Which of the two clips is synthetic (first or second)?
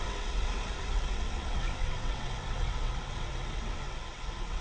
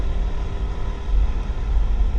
first